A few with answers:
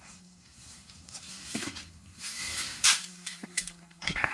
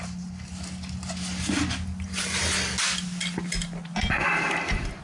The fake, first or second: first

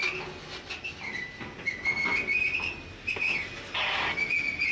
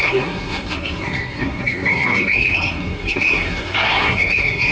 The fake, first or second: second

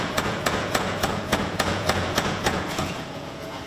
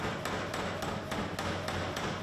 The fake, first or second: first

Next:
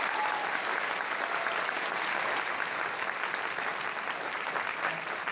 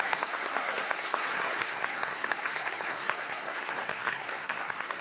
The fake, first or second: second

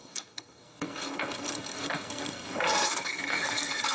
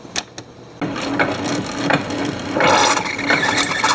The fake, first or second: first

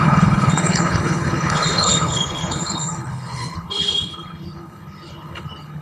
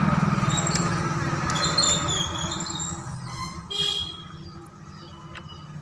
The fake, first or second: first